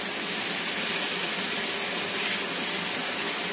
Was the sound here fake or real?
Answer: real